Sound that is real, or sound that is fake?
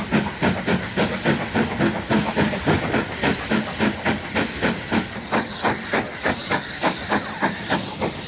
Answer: real